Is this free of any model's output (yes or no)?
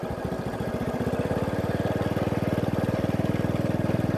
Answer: yes